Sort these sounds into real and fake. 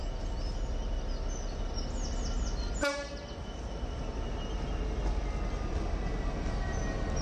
real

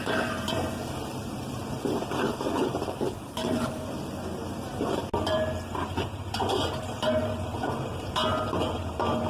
real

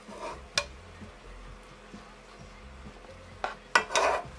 real